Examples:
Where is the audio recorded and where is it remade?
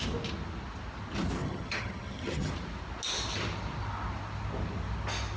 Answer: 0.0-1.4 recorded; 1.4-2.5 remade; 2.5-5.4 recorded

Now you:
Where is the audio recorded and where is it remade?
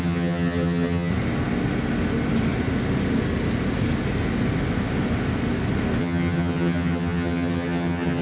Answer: 0.0-1.1 remade; 1.1-6.0 recorded; 6.0-8.2 remade